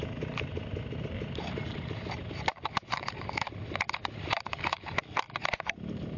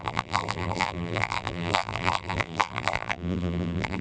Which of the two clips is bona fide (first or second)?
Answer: first